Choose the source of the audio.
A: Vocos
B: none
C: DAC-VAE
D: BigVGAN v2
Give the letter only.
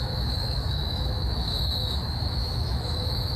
C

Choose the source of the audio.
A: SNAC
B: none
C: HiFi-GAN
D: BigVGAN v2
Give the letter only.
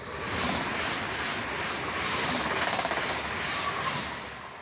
B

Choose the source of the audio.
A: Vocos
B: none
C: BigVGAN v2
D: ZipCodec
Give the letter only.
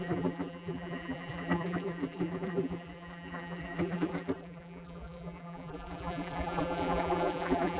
C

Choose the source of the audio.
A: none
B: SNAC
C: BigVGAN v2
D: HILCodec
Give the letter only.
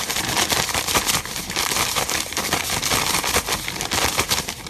A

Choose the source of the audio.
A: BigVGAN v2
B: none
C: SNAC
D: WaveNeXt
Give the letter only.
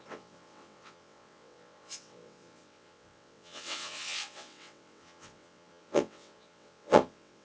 D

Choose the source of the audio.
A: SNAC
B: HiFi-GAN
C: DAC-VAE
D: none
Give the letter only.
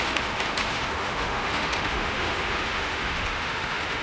C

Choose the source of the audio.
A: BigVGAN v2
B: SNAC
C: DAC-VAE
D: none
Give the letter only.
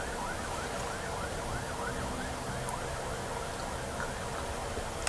D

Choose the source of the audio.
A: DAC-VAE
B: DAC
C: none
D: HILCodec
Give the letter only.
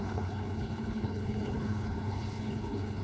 D